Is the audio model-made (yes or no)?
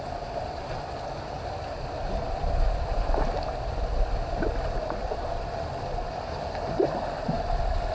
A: no